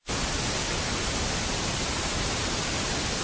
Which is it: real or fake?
real